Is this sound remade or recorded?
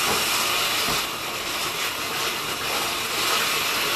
recorded